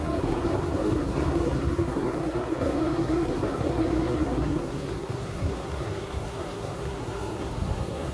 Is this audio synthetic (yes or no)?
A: yes